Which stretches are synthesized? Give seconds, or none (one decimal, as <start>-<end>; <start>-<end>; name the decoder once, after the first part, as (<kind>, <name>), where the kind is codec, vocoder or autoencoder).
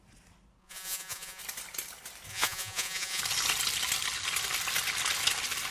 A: 0.6-1.4 (vocoder, Vocos); 2.3-3.2